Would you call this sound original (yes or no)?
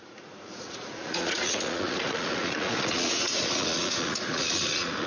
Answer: no